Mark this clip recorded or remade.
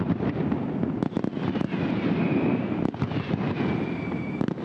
recorded